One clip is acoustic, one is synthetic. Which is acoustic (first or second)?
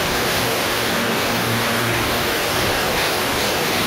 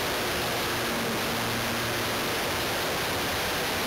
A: second